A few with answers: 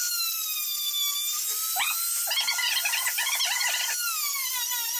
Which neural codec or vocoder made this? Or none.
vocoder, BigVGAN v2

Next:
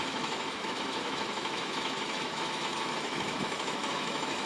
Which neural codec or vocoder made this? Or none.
autoencoder, DAC-VAE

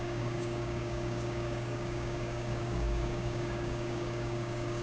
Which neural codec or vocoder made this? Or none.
codec, DAC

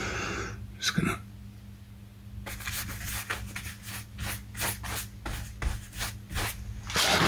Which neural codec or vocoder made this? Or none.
none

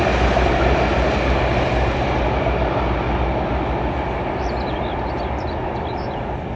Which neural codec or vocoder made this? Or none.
none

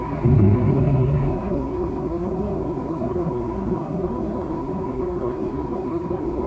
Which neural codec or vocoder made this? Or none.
codec, SNAC